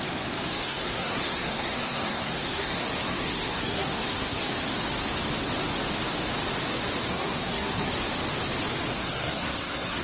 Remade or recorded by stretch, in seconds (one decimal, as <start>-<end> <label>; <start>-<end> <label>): 0.0-0.5 recorded; 0.5-4.5 remade; 4.5-7.1 recorded; 7.1-7.9 remade; 7.9-8.9 recorded; 8.9-10.0 remade